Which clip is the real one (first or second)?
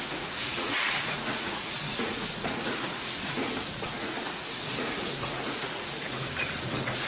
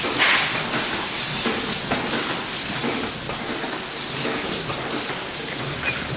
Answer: second